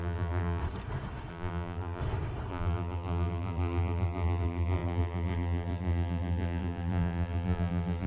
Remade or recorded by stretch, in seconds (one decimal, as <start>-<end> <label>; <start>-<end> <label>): 0.0-0.6 remade; 0.6-1.3 recorded; 1.3-2.0 remade; 2.0-2.5 recorded; 2.5-8.1 remade